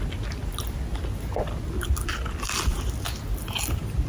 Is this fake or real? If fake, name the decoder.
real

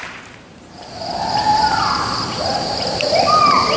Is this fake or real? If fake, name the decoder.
fake, vocoder, BigVGAN v2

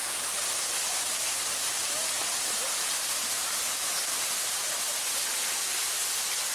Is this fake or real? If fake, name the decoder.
real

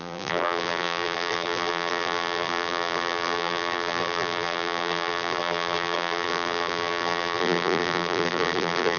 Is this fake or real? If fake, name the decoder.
fake, vocoder, BigVGAN v2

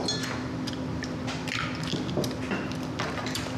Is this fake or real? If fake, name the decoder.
real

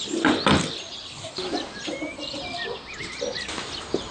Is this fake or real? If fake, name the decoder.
real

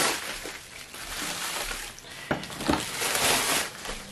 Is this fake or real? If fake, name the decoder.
real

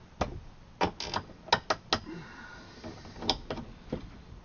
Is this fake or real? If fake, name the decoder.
real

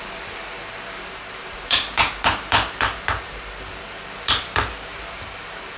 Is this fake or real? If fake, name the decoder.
fake, vocoder, BigVGAN v2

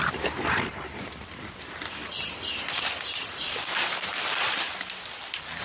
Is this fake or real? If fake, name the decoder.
fake, vocoder, BigVGAN v2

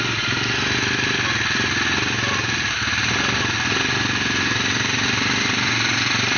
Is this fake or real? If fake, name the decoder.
real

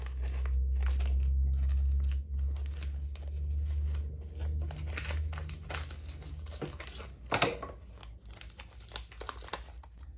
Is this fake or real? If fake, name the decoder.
real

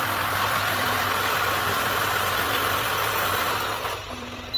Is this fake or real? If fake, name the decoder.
fake, vocoder, BigVGAN v2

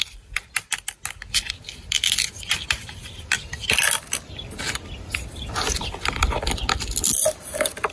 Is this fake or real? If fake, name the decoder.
real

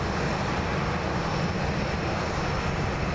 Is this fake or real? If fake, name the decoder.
real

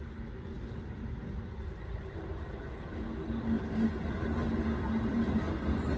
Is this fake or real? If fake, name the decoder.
real